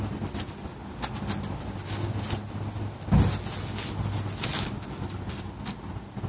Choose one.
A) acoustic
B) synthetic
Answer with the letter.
A